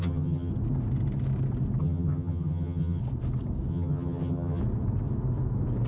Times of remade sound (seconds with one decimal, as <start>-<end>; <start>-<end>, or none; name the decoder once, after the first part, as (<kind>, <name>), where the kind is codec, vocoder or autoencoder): 0.0-0.5 (vocoder, HiFi-GAN); 1.8-3.0; 3.7-4.6